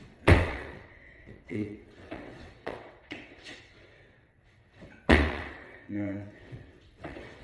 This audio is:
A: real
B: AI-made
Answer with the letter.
B